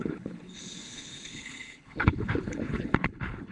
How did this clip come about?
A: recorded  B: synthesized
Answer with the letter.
B